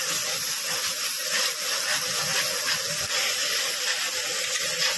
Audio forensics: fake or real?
real